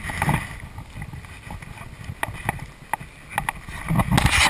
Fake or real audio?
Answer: real